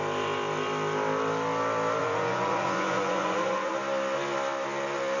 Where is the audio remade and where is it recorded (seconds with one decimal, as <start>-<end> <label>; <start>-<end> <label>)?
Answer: 0.0-2.0 recorded; 2.0-3.7 remade; 3.7-5.2 recorded